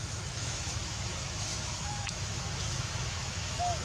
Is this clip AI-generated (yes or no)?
yes